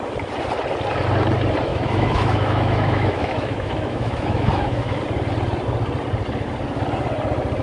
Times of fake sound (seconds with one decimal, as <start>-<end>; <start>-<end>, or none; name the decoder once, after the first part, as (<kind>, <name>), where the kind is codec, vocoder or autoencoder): 1.7-5.0 (autoencoder, DAC-VAE)